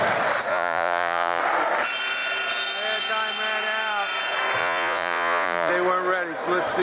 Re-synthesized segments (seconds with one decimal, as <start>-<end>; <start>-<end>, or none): 0.5-1.4; 4.6-5.7